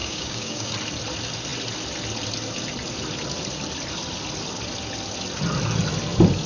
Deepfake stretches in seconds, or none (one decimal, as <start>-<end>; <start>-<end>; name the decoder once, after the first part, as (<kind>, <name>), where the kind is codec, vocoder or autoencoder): 0.0-0.7 (codec, DAC)